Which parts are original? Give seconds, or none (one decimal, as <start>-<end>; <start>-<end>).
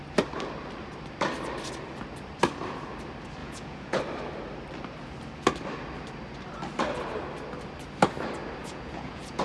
0.0-3.4; 4.0-8.6